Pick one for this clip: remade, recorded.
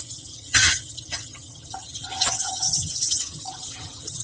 remade